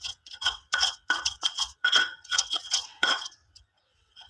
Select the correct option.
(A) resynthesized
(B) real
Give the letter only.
A